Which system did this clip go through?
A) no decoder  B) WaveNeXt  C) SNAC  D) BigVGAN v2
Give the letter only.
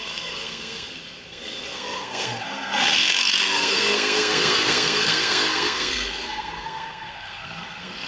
C